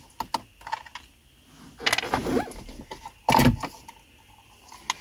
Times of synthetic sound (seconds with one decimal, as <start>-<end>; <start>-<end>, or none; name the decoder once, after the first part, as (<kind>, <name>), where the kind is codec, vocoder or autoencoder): none